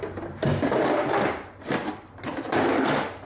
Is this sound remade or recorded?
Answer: recorded